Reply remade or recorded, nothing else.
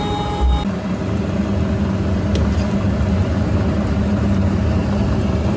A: recorded